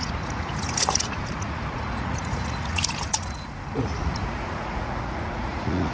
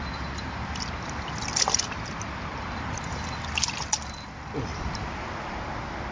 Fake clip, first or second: first